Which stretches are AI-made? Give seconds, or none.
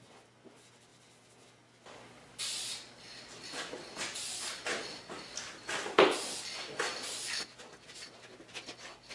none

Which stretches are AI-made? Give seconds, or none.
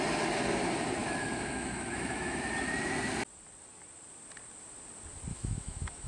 1.0-2.5; 5.3-6.1